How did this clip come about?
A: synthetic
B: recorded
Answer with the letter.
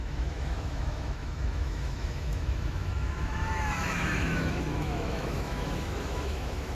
A